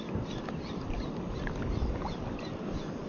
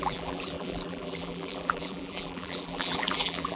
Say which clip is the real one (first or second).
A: first